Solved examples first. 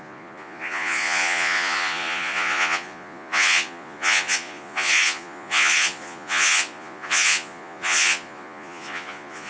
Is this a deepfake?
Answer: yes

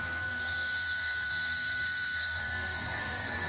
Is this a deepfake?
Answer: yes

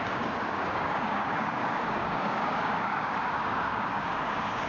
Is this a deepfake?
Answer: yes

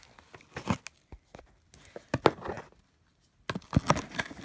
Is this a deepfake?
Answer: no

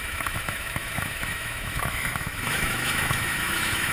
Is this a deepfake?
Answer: yes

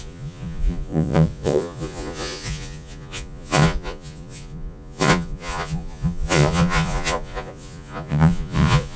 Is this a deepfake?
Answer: yes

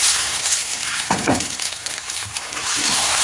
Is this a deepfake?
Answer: yes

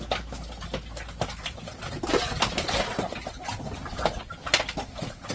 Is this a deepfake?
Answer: no